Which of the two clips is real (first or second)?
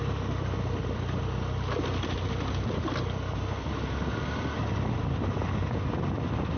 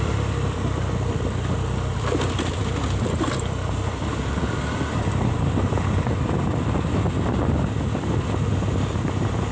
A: first